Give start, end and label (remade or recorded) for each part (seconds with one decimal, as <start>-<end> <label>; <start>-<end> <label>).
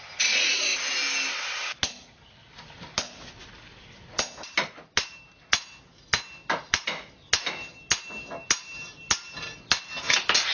0.0-10.5 recorded